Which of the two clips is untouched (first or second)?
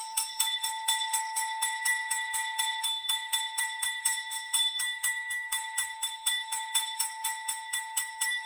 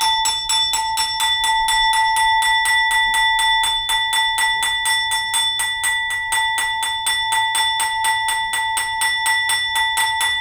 second